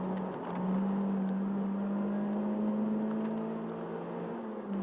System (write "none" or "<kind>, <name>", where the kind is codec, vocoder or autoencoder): none